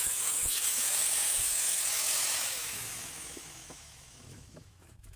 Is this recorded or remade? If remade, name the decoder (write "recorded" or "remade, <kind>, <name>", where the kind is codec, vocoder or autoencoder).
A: remade, autoencoder, DAC-VAE